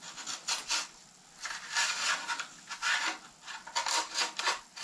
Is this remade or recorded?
recorded